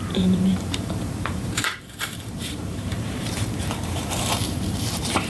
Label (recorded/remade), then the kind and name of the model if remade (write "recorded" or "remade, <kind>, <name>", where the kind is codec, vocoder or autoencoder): remade, vocoder, BigVGAN v2